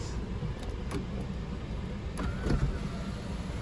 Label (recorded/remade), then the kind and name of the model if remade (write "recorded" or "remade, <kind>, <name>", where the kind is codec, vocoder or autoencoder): recorded